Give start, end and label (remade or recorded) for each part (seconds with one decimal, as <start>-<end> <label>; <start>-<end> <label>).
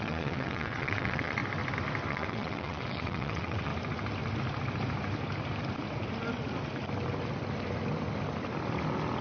0.0-1.4 remade; 1.4-2.1 recorded; 2.1-3.7 remade; 3.7-9.2 recorded